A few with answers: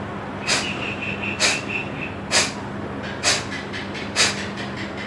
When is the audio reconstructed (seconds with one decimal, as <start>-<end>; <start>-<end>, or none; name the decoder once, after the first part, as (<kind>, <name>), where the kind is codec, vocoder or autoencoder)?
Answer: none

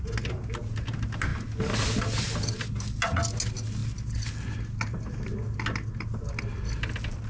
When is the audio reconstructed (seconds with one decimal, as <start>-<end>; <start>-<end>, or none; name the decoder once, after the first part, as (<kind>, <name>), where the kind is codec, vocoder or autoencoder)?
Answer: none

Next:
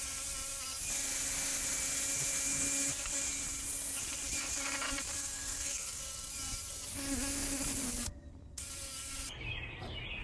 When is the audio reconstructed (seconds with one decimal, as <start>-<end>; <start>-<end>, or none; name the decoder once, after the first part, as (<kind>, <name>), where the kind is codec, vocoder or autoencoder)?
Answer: 5.2-6.0 (codec, SNAC)

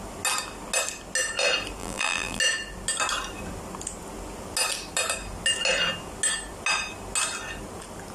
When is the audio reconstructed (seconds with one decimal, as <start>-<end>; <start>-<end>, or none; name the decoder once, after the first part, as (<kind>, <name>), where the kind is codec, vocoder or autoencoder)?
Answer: 1.8-2.4 (vocoder, BigVGAN v2)